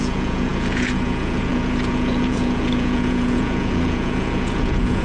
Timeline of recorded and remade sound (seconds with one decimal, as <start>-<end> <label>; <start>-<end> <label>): 0.0-5.0 remade